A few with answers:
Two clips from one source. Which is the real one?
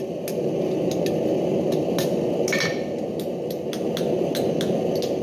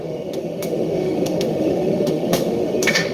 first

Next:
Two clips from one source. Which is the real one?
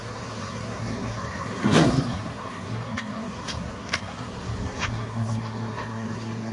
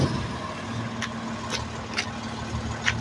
second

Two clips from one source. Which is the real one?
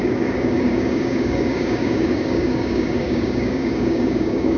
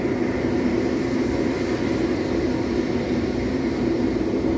second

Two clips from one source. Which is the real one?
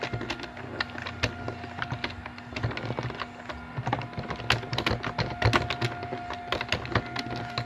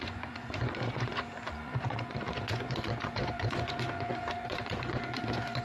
first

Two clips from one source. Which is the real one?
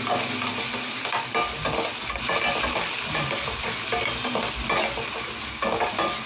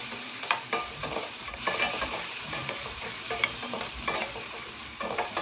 first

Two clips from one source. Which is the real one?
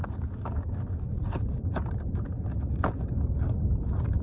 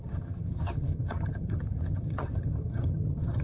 first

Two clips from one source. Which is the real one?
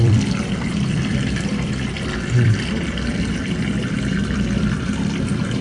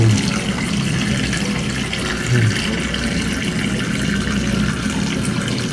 second